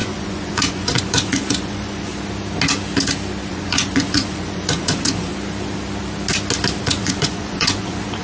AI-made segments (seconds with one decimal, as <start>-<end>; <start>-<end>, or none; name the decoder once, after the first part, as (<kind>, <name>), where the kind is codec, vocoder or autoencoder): 0.0-2.1 (vocoder, Vocos); 3.5-5.3; 6.8-8.2

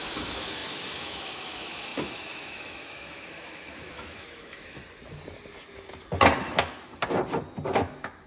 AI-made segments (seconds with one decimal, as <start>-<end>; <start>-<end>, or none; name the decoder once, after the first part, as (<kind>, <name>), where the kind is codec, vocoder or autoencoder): 0.0-4.8 (autoencoder, DAC-VAE); 6.4-6.9; 7.7-8.3

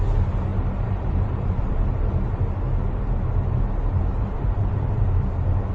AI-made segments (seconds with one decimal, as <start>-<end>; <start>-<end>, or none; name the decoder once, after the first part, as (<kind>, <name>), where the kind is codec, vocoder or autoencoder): 0.5-2.4 (vocoder, BigVGAN v2); 4.1-5.1

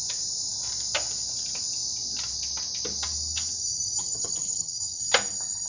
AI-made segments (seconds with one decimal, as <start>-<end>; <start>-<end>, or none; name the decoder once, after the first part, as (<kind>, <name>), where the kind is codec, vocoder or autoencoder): 3.6-5.0 (vocoder, HiFi-GAN)

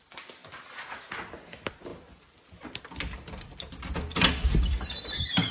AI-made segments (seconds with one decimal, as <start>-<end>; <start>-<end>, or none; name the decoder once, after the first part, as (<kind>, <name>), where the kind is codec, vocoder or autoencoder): none

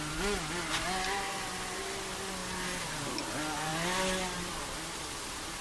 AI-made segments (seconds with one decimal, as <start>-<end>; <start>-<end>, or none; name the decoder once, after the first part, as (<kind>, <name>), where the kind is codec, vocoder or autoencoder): none

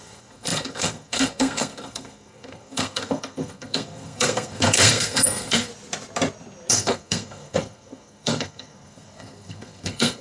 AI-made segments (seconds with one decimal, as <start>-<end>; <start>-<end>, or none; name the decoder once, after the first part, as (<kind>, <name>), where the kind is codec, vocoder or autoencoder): 0.0-5.7 (codec, SNAC); 6.7-10.2

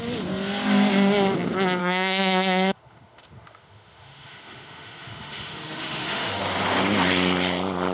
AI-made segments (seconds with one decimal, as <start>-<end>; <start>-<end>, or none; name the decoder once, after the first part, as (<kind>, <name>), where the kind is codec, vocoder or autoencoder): 1.8-6.4 (autoencoder, DAC-VAE)